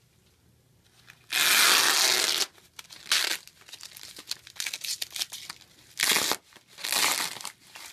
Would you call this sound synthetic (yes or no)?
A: no